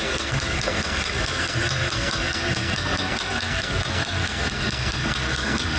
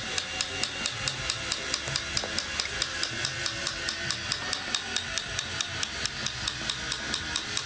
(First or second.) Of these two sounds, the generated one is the first